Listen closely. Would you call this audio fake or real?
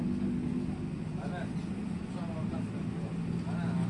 real